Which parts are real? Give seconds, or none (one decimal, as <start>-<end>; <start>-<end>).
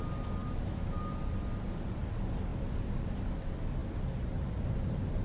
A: 0.0-0.4; 1.0-5.2